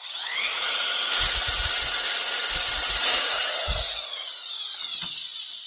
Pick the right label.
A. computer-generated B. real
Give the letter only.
A